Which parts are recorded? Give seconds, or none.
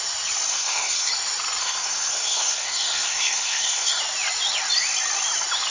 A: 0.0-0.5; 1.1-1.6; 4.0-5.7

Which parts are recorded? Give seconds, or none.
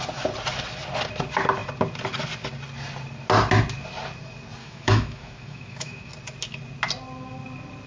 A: 0.0-4.6; 6.1-7.9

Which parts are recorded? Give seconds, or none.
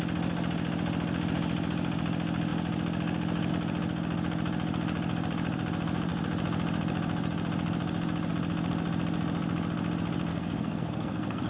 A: 0.0-10.3